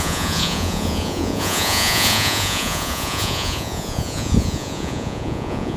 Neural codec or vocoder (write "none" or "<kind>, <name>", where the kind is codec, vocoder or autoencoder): vocoder, Vocos